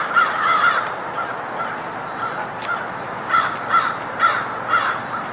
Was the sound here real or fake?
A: real